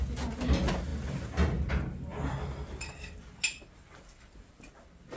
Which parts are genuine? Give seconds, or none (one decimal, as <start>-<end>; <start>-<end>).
0.0-5.2